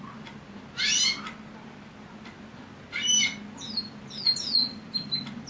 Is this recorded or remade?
recorded